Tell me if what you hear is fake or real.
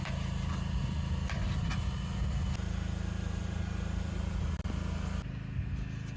real